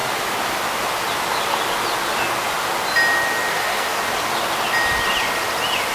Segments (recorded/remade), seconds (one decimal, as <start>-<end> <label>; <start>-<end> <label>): 0.0-3.5 recorded; 3.5-4.0 remade; 4.0-5.9 recorded